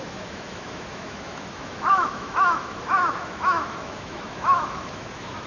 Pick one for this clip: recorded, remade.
remade